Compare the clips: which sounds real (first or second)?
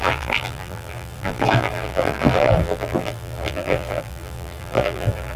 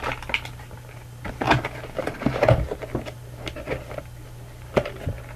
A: second